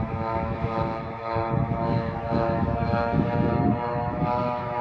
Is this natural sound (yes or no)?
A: no